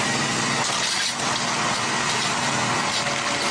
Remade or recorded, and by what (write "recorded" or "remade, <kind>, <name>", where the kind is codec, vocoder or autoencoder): recorded